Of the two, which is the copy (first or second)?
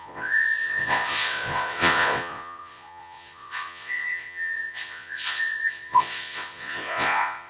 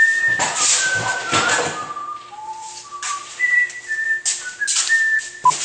first